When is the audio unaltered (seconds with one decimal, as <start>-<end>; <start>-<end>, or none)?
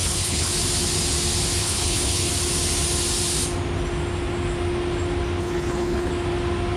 0.5-1.6; 2.3-5.4; 6.1-6.8